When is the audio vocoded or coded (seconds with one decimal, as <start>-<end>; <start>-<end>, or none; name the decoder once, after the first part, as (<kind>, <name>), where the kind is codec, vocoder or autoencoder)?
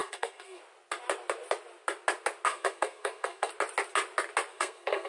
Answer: 0.0-0.6 (codec, SNAC); 2.5-3.5; 4.5-5.1